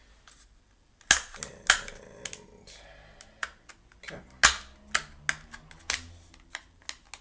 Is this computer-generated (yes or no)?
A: no